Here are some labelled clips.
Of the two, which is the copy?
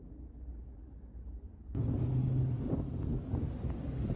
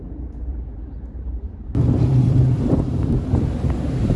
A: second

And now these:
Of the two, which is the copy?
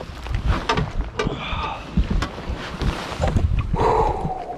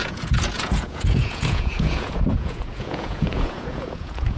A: second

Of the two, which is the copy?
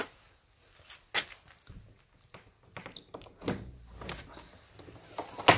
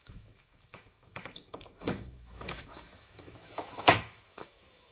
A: second